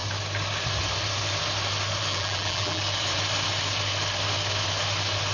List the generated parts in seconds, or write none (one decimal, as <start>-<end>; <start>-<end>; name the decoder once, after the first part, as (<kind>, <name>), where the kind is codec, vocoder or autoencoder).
2.1-2.8 (vocoder, BigVGAN v2)